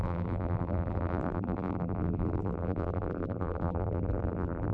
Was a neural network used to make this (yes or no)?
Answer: yes